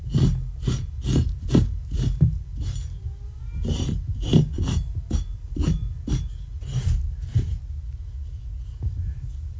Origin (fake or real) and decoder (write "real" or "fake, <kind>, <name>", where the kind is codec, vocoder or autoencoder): real